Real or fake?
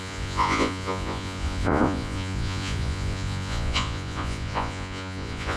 fake